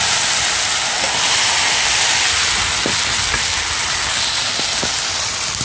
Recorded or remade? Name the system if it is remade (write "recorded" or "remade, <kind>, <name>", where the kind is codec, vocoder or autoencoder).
recorded